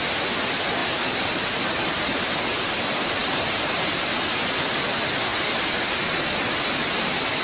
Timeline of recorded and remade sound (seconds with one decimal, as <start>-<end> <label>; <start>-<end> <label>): 0.0-0.8 recorded; 0.8-2.8 remade; 2.8-3.2 recorded; 3.2-3.9 remade; 3.9-7.4 recorded